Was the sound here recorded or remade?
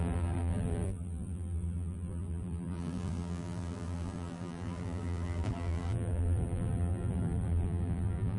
remade